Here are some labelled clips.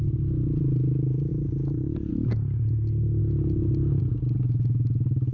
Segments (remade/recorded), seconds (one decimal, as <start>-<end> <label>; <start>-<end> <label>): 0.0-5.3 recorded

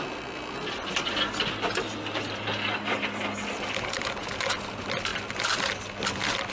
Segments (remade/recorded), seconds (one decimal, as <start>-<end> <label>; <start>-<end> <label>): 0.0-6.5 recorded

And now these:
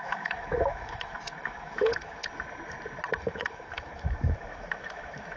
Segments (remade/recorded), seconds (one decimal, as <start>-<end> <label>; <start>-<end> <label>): 0.0-2.2 remade; 2.2-3.2 recorded; 3.2-5.4 remade

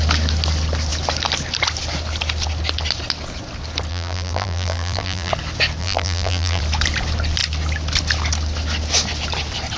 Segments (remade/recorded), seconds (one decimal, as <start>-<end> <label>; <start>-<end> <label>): 0.0-3.9 recorded; 3.9-5.3 remade; 5.3-5.8 recorded; 5.8-6.6 remade; 6.6-9.8 recorded

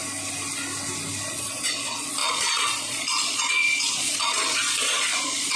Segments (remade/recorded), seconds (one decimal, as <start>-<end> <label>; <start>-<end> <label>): 0.0-1.3 recorded; 1.3-5.6 remade

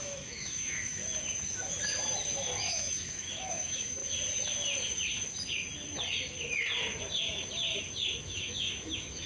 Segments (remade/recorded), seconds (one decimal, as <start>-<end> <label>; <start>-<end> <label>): 0.0-1.0 remade; 1.0-2.6 recorded; 2.6-4.0 remade; 4.0-8.2 recorded; 8.2-9.3 remade

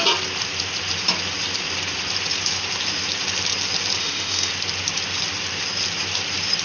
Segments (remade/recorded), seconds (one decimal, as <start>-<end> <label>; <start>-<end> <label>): 0.0-4.0 recorded; 4.0-4.5 remade; 4.5-6.6 recorded